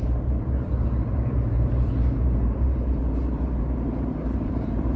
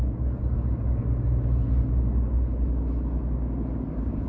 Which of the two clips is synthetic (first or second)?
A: first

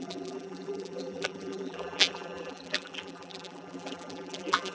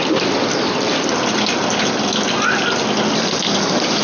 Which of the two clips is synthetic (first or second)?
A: first